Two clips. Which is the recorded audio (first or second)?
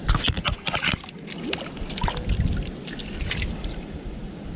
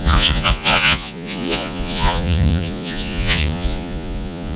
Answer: first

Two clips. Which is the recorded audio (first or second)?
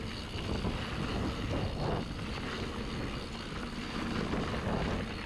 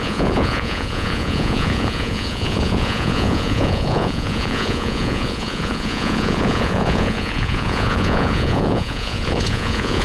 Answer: first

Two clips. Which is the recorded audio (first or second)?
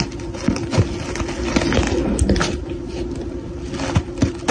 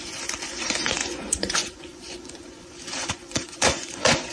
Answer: first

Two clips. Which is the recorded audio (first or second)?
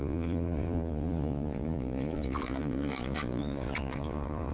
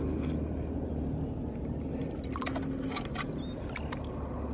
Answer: second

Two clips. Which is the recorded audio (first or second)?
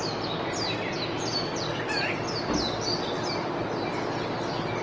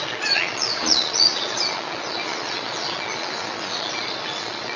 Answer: first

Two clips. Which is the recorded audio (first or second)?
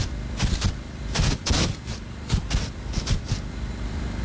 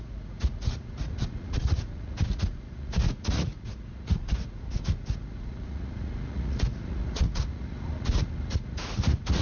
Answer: first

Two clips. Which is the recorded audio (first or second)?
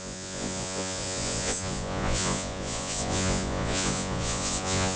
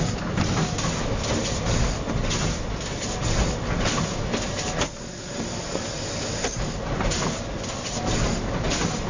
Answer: second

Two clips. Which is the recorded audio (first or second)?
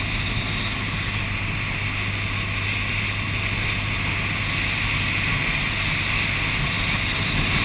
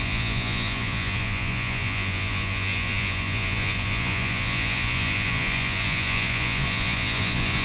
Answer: first